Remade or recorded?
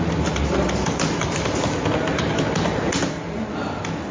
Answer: recorded